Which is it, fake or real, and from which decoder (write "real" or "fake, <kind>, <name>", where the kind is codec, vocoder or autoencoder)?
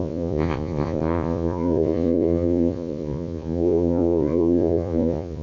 fake, vocoder, Vocos